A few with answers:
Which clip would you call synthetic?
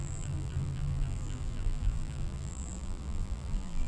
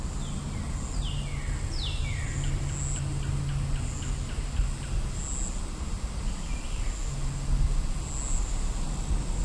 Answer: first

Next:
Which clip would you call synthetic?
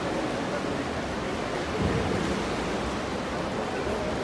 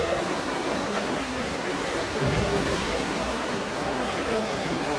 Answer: second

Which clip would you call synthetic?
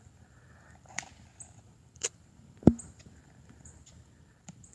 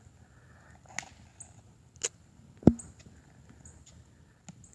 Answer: first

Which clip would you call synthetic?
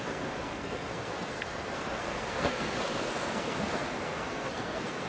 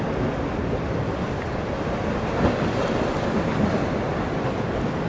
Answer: first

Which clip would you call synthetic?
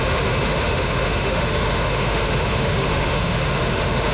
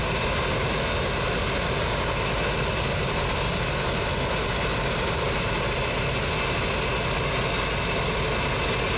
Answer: first